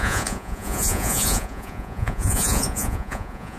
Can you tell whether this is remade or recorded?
remade